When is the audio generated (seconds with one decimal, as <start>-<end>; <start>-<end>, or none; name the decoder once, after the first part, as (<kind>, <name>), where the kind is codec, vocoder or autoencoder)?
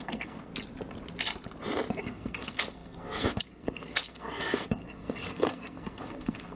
0.0-0.5 (codec, SNAC); 2.0-6.6